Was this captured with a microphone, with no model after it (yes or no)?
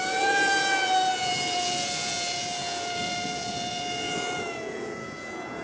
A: no